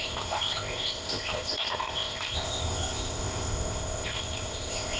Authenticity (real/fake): fake